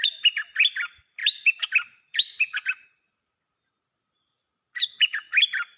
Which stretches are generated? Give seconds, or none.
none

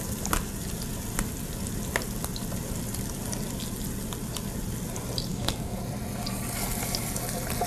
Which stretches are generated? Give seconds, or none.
5.3-5.8 (codec, DAC)

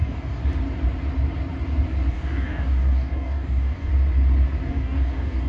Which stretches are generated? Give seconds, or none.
0.0-0.4 (codec, DAC); 2.1-3.9; 4.7-5.5

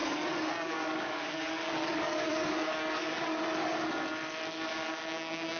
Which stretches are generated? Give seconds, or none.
0.0-3.4 (codec, DAC); 4.7-5.6